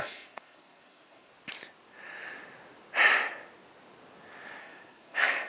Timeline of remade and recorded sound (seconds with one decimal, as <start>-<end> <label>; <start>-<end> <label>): 0.0-1.3 remade; 1.3-4.6 recorded; 4.6-5.5 remade